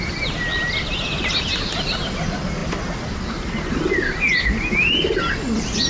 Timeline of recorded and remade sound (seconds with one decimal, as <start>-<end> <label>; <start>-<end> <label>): 0.0-5.9 recorded